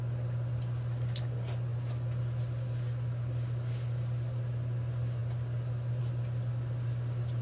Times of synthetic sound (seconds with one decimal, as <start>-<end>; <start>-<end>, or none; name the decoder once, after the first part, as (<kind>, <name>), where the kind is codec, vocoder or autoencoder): none